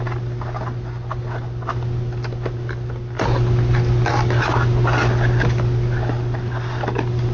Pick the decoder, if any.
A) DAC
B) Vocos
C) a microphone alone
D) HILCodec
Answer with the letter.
C